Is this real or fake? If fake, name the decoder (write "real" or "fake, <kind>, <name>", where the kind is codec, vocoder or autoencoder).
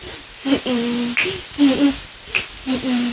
real